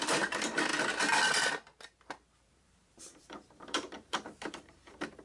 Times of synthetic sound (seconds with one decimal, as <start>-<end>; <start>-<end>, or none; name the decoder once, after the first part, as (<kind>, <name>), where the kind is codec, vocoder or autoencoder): 0.0-0.7 (vocoder, BigVGAN v2); 2.5-5.2